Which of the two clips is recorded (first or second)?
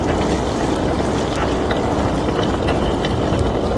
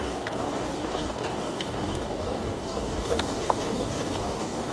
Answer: first